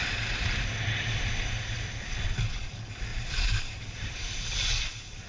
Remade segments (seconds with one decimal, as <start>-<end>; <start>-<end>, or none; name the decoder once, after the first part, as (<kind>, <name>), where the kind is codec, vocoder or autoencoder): 3.1-4.5 (vocoder, BigVGAN v2)